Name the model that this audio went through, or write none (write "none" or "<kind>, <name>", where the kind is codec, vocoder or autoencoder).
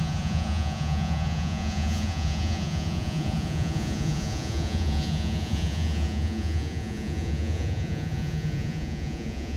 vocoder, Vocos